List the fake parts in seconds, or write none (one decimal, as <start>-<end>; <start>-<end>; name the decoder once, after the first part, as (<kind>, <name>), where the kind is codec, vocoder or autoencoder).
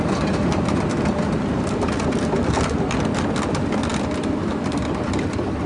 0.0-3.9 (vocoder, BigVGAN v2); 5.1-5.7